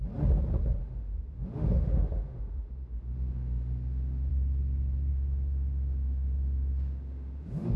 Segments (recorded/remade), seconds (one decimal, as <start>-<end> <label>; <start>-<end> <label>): 0.0-0.8 recorded; 0.8-4.3 remade; 4.3-5.1 recorded; 5.1-7.8 remade